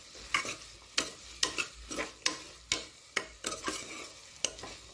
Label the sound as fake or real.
real